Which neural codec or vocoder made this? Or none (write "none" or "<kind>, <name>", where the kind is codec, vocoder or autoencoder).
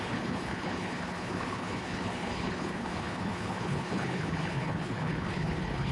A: codec, HILCodec